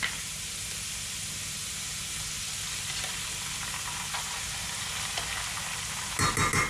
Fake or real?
real